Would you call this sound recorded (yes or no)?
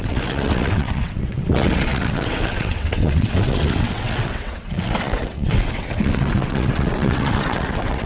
no